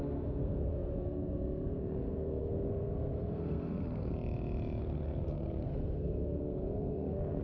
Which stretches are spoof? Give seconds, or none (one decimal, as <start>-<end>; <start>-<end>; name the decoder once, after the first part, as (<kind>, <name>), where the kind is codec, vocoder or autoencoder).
0.0-4.1 (codec, SNAC); 4.8-7.4